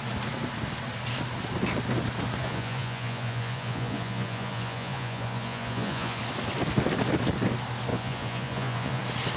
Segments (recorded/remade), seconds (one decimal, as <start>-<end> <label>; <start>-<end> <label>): 0.0-2.4 recorded; 2.4-6.2 remade; 6.2-7.9 recorded; 7.9-9.0 remade; 9.0-9.4 recorded